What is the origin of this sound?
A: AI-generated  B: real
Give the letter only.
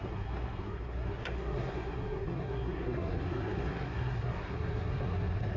A